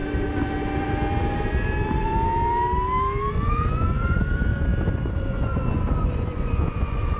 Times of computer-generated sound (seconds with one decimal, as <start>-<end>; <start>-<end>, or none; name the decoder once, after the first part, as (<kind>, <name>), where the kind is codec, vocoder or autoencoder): 3.3-7.2 (vocoder, Vocos)